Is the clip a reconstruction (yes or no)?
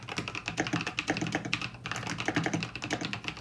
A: no